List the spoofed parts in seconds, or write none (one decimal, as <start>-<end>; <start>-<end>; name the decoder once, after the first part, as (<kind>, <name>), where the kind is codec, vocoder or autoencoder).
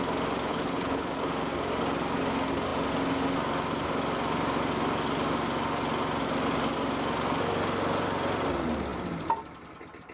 0.5-1.1 (codec, HILCodec)